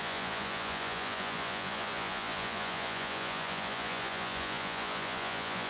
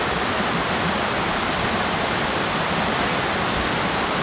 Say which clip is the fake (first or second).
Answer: first